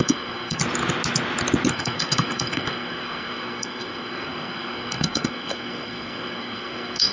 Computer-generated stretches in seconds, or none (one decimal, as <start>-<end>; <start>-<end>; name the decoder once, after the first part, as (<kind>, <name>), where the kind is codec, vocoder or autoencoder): 0.0-0.6 (codec, SNAC); 1.7-7.1